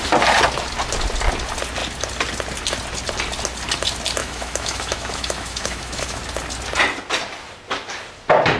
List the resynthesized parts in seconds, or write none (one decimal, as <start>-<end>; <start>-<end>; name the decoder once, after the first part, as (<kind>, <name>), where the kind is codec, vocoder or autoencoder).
4.2-6.2 (autoencoder, DAC-VAE)